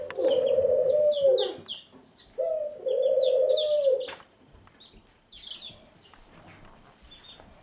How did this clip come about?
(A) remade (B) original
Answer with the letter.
B